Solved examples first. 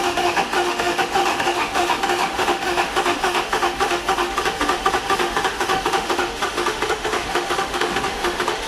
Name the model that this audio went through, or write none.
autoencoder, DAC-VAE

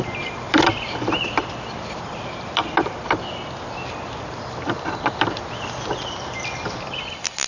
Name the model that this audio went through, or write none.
vocoder, BigVGAN v2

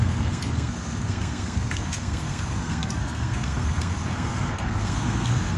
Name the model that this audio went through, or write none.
codec, SNAC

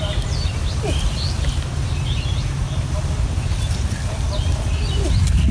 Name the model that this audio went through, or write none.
none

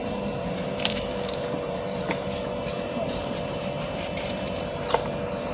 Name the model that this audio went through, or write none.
vocoder, BigVGAN v2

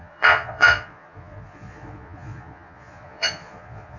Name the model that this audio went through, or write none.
vocoder, Vocos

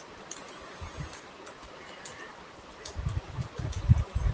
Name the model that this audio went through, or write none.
none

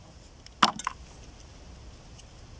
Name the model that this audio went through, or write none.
none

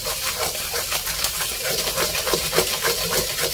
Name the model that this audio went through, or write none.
vocoder, BigVGAN v2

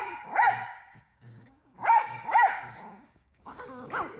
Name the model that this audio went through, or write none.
codec, DAC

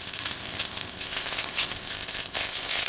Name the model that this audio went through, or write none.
codec, ZipCodec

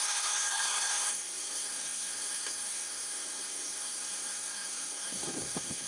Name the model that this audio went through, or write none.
codec, SNAC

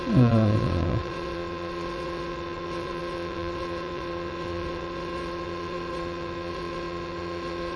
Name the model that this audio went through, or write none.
vocoder, WaveNeXt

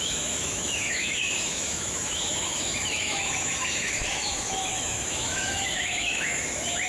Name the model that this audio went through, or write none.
autoencoder, DAC-VAE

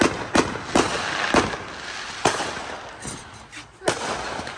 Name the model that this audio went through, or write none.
none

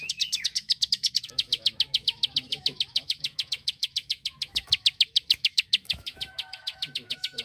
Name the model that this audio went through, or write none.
autoencoder, DAC-VAE